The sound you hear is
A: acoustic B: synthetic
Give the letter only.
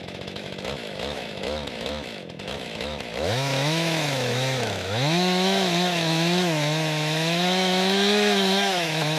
B